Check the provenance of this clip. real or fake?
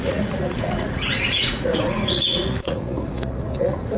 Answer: fake